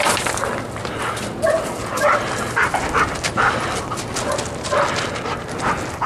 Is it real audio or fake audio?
real